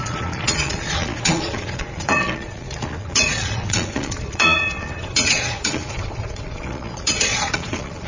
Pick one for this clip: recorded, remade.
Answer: remade